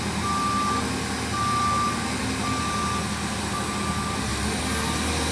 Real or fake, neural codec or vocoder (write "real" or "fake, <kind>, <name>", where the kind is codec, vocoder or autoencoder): real